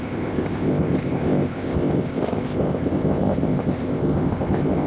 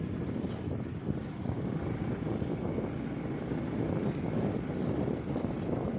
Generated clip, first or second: first